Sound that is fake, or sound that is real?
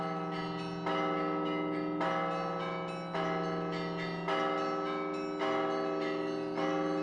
real